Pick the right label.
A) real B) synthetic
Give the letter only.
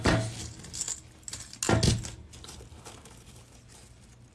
A